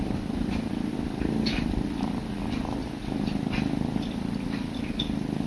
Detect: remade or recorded recorded